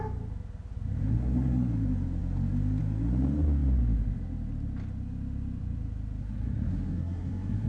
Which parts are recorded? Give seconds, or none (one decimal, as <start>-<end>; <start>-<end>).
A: 0.0-1.1; 1.7-6.2